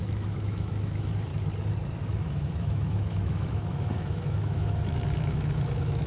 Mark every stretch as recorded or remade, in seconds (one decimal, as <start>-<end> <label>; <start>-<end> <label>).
0.0-1.3 remade; 1.3-2.0 recorded; 2.0-6.1 remade